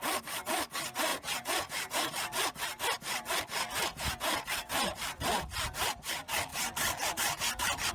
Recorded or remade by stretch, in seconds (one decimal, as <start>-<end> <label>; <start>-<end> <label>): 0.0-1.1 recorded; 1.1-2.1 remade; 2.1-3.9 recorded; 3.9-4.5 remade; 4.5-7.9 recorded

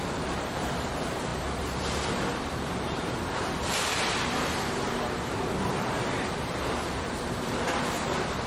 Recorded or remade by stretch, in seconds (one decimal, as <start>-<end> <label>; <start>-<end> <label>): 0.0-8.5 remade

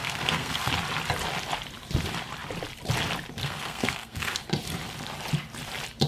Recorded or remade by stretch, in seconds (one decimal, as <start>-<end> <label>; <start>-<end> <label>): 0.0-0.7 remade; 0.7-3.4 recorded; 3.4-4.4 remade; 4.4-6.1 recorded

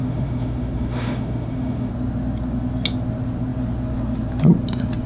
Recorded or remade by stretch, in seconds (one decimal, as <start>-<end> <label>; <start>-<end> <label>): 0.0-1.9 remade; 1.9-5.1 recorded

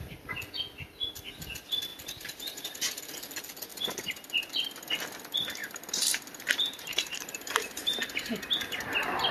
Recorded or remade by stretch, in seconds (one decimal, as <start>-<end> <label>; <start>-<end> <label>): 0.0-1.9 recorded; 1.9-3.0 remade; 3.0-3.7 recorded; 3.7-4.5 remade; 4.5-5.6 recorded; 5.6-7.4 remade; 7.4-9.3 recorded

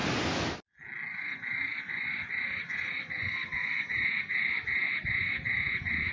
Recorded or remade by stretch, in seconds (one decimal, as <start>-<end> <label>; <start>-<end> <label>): 0.0-1.1 recorded; 1.1-6.1 remade

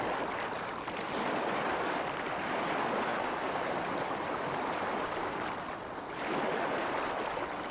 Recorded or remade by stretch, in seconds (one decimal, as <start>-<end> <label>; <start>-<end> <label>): 0.0-7.7 recorded

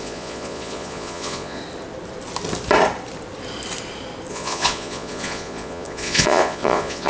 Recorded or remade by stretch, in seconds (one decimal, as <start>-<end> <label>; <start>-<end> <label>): 0.0-1.6 remade; 1.6-4.3 recorded; 4.3-7.1 remade